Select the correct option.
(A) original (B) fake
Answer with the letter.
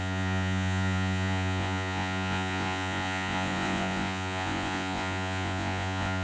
B